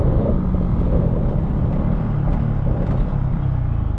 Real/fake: real